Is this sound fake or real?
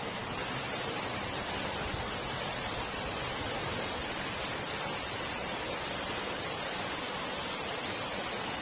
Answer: real